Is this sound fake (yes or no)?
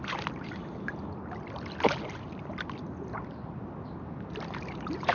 no